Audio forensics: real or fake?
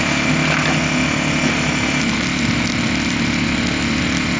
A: real